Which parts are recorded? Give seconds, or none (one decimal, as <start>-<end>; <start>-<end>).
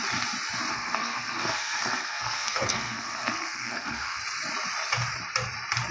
0.0-0.7; 4.2-5.9